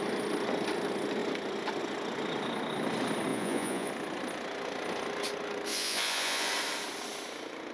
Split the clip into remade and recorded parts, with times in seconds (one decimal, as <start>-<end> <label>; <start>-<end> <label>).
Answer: 0.0-3.3 recorded; 3.3-3.9 remade; 3.9-5.7 recorded; 5.7-6.5 remade; 6.5-7.7 recorded